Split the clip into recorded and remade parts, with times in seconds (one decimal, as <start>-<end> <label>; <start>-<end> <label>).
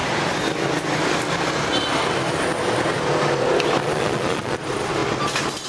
0.0-3.8 recorded; 3.8-4.6 remade; 4.6-5.7 recorded